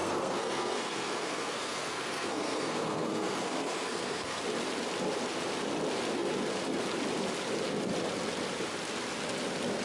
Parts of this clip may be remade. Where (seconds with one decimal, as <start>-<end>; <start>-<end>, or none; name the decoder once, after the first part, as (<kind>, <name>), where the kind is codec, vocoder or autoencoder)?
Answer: 0.0-4.4 (codec, SNAC)